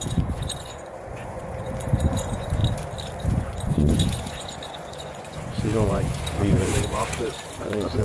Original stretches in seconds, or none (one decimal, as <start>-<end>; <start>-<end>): 2.6-3.2